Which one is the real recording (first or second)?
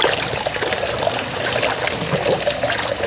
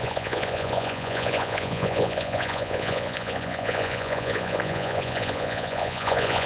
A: first